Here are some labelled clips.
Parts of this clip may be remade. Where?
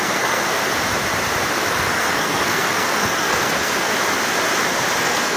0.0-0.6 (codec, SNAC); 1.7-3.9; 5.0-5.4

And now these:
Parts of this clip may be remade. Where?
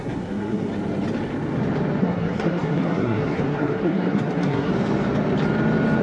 0.0-0.7 (codec, SNAC); 2.0-4.7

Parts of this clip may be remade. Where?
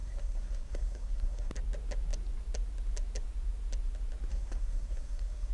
0.0-1.5 (codec, SNAC); 4.3-5.5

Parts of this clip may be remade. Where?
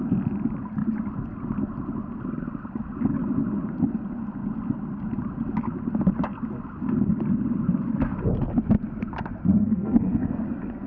9.4-10.0 (codec, SNAC)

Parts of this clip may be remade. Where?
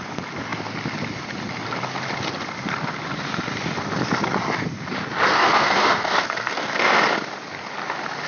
5.3-7.0 (codec, SNAC)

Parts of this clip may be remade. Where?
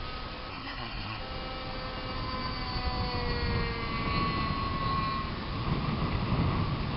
0.5-1.2 (codec, SNAC)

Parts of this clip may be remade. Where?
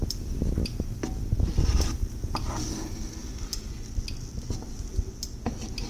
none